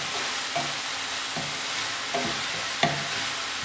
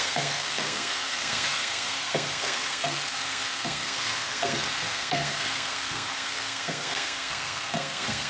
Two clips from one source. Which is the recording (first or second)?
first